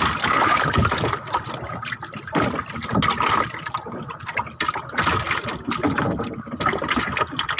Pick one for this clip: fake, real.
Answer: real